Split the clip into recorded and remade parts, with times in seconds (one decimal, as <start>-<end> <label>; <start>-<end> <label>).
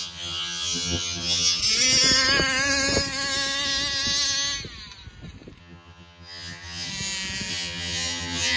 0.0-1.6 remade; 1.6-5.6 recorded; 5.6-6.9 remade; 6.9-7.5 recorded; 7.5-8.6 remade